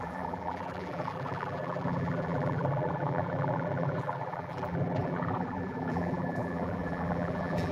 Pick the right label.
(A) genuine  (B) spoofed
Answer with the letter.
B